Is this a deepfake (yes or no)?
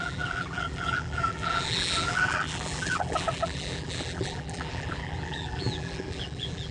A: yes